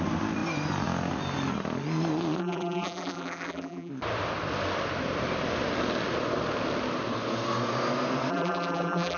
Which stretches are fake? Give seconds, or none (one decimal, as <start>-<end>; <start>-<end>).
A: 2.4-3.9; 8.3-9.2